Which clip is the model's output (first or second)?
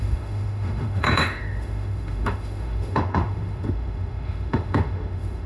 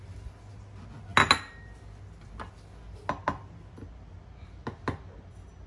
first